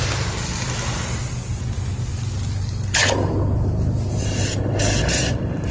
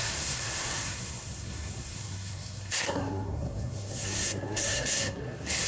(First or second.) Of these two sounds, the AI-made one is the second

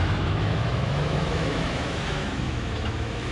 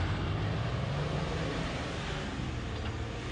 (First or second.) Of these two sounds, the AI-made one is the first